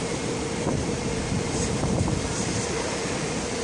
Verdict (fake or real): fake